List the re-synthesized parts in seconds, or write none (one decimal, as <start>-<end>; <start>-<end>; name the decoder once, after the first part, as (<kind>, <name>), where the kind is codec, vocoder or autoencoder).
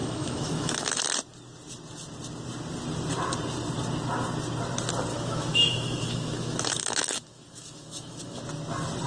0.0-1.0 (autoencoder, DAC-VAE); 5.1-8.4